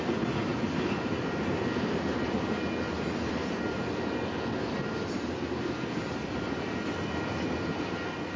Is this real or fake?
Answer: real